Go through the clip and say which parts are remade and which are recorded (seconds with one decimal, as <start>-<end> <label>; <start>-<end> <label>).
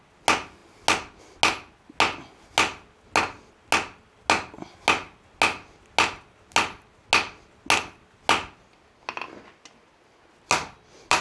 0.0-11.2 recorded